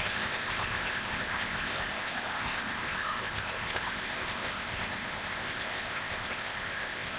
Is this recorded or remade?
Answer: remade